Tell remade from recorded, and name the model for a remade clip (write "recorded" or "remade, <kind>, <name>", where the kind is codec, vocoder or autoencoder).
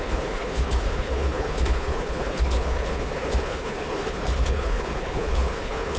remade, codec, HILCodec